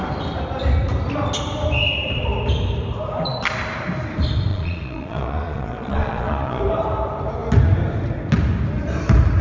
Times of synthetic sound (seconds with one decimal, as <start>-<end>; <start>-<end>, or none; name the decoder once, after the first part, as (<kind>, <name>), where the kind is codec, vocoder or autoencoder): 4.5-6.6 (vocoder, Vocos)